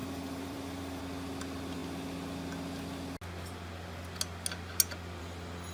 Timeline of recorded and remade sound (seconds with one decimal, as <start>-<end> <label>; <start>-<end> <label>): 0.0-1.0 remade; 1.0-5.7 recorded